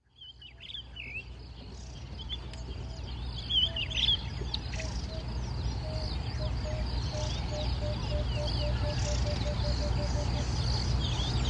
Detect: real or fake real